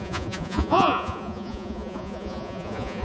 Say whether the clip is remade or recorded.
remade